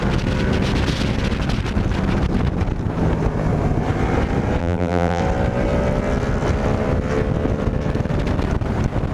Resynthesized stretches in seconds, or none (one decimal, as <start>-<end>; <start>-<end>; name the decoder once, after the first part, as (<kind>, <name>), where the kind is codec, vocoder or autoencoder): 4.6-5.2 (vocoder, BigVGAN v2)